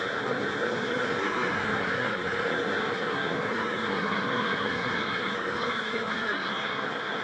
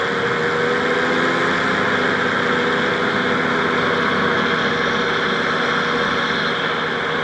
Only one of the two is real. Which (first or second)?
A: second